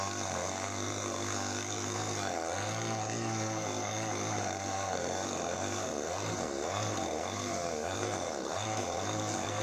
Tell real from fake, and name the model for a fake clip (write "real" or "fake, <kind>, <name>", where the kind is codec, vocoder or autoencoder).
fake, codec, SNAC